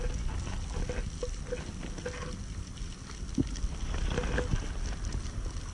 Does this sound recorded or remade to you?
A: recorded